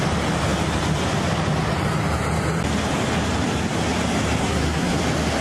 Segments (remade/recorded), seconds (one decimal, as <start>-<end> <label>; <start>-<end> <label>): 0.0-4.4 recorded; 4.4-5.0 remade; 5.0-5.4 recorded